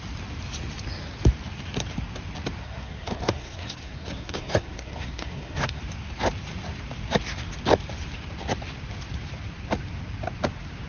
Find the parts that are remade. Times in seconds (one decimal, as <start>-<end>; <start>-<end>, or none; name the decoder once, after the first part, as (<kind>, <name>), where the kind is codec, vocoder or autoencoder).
2.6-5.8 (codec, SNAC)